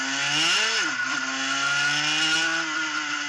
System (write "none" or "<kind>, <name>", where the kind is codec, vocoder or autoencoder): none